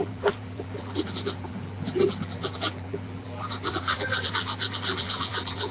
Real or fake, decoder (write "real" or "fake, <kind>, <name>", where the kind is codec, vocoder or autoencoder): fake, vocoder, BigVGAN v2